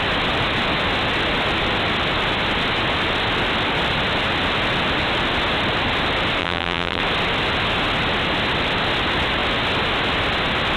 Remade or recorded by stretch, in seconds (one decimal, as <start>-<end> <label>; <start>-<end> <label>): 0.0-6.4 recorded; 6.4-7.0 remade; 7.0-10.8 recorded